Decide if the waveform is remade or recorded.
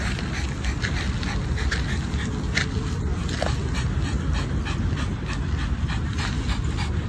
recorded